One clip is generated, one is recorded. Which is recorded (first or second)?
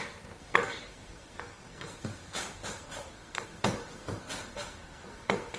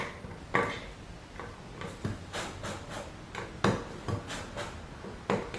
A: second